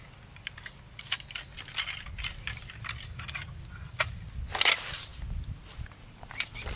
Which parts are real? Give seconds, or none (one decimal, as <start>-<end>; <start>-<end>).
0.0-6.8